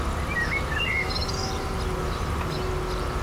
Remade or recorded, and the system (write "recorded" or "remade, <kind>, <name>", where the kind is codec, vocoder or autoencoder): recorded